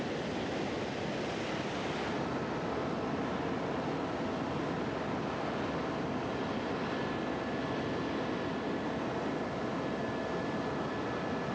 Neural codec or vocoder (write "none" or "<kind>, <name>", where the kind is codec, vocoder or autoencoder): none